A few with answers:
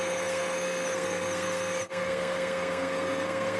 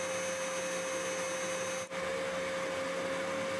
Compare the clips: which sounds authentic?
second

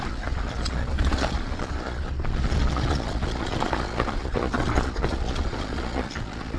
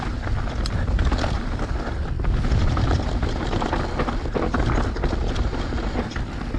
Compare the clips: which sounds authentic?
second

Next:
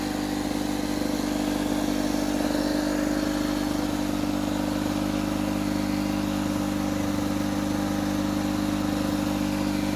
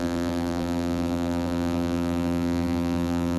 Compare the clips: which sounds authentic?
first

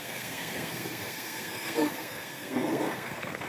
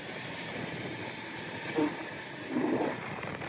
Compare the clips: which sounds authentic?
second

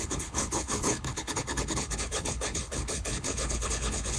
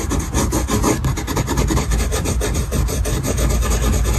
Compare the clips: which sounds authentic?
second